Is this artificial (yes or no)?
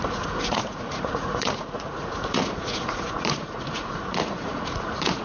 yes